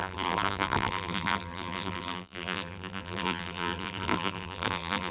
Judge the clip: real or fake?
fake